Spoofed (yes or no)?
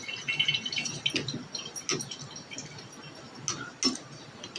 no